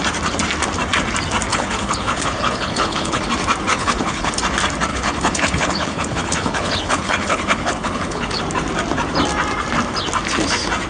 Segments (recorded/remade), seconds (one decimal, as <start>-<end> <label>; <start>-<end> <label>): 0.0-1.5 recorded; 1.5-3.2 remade; 3.2-3.7 recorded; 3.7-4.3 remade; 4.3-4.9 recorded; 4.9-8.4 remade; 8.4-10.9 recorded

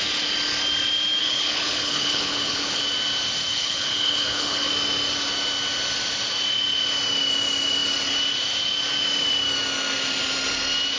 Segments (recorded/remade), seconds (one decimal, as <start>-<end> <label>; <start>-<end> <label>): 0.0-1.2 recorded; 1.2-2.8 remade; 2.8-3.5 recorded; 3.5-4.7 remade; 4.7-11.0 recorded